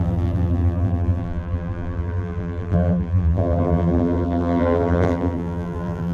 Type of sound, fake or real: fake